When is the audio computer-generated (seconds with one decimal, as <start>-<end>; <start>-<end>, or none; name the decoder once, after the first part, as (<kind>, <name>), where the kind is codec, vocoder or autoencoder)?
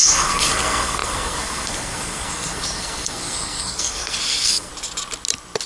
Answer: 0.0-4.7 (codec, SNAC)